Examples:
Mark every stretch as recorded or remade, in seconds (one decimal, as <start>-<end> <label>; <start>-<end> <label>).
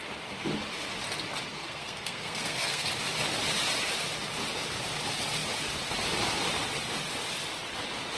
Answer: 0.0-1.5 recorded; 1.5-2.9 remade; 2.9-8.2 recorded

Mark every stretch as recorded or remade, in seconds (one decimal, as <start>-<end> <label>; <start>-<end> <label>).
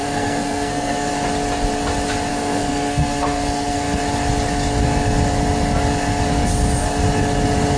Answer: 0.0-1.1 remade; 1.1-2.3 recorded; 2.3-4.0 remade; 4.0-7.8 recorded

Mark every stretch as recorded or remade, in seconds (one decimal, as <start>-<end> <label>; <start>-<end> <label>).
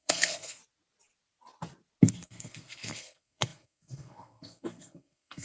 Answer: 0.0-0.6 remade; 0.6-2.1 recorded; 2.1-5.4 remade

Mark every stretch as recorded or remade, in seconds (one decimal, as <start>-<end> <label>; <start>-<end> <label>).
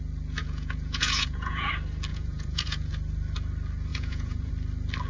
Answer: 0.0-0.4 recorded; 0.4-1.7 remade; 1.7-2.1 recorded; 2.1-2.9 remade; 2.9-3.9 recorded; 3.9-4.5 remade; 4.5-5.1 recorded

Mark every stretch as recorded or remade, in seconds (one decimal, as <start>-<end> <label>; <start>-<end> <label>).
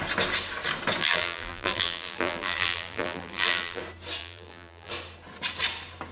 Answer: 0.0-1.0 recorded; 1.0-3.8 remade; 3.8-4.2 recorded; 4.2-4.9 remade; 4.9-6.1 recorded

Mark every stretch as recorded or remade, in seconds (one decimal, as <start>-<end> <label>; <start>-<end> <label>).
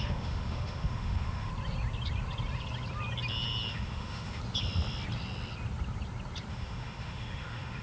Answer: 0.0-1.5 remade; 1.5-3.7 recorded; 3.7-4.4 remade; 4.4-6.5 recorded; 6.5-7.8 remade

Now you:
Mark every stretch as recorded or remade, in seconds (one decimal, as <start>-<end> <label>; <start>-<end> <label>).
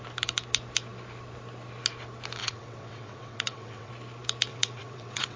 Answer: 0.0-2.4 recorded; 2.4-3.9 remade; 3.9-4.5 recorded; 4.5-5.4 remade